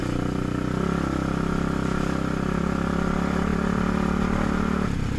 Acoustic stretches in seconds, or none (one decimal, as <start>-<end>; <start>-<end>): 0.0-5.2